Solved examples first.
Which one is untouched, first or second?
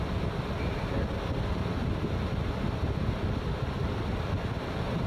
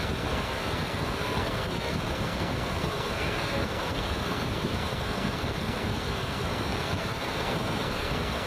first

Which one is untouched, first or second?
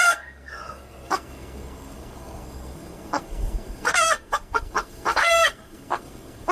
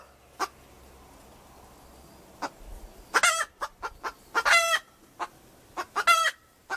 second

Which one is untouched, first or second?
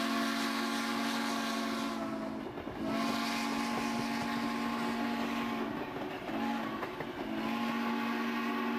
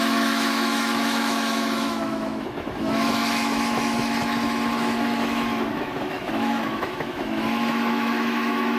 first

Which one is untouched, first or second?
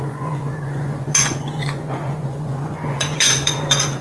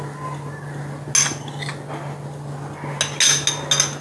second